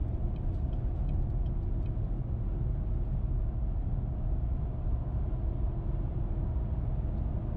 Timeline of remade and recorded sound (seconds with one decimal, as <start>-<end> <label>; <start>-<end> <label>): 0.0-1.0 remade; 1.0-7.6 recorded